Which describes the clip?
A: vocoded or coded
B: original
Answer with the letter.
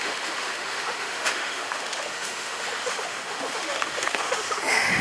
A